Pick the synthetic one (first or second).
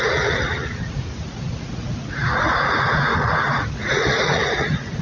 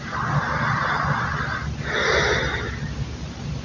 first